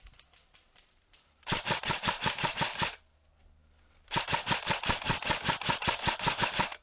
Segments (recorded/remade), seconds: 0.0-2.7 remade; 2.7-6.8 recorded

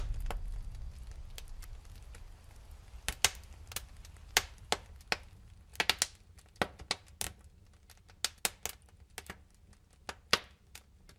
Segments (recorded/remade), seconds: 0.0-11.2 recorded

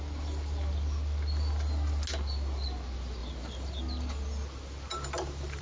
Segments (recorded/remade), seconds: 0.0-3.2 recorded; 3.2-3.8 remade; 3.8-4.9 recorded; 4.9-5.6 remade

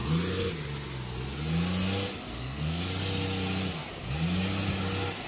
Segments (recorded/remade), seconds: 0.0-2.3 recorded; 2.3-2.8 remade; 2.8-5.3 recorded